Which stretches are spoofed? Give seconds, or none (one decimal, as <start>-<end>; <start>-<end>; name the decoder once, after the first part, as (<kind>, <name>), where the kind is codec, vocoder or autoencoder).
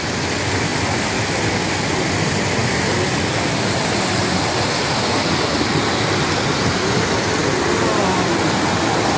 none